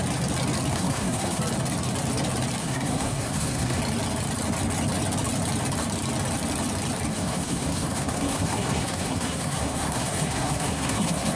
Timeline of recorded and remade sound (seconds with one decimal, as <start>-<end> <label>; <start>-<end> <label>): 0.0-0.7 recorded; 0.7-1.4 remade; 1.4-2.6 recorded; 2.6-3.8 remade; 3.8-7.1 recorded; 7.1-11.4 remade